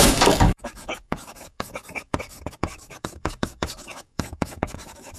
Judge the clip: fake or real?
fake